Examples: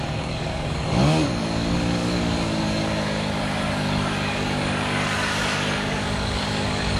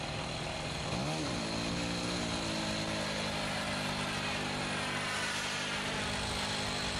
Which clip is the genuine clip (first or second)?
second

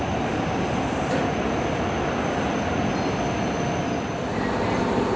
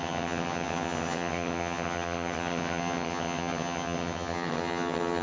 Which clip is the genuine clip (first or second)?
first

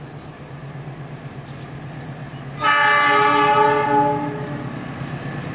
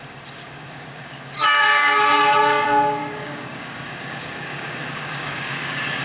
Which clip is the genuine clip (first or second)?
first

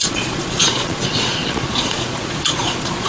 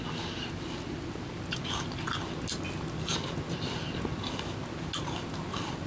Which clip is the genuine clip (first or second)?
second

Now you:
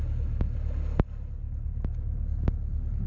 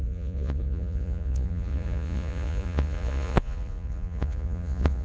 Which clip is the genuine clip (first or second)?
first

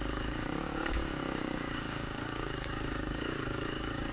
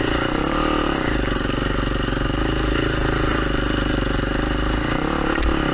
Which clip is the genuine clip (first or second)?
second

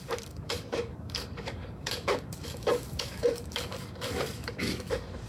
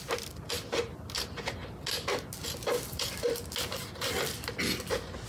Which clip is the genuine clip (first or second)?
second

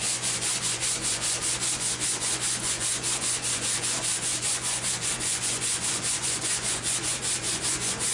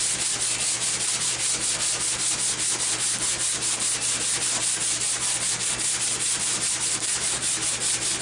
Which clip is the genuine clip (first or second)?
second